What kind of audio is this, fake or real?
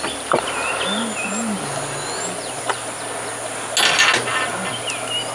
real